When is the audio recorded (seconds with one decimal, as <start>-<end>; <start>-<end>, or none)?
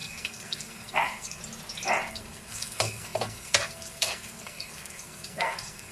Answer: 1.4-2.1